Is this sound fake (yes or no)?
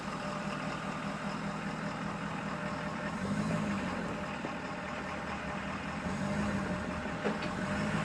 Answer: no